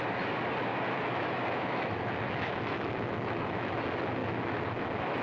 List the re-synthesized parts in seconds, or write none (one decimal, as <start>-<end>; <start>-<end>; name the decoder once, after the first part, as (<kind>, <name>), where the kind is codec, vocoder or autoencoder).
0.7-3.8 (autoencoder, DAC-VAE); 4.2-5.2